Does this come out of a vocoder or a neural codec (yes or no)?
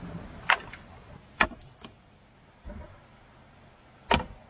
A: no